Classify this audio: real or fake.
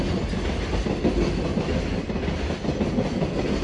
real